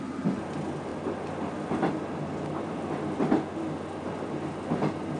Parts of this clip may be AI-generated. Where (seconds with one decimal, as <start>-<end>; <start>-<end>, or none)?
none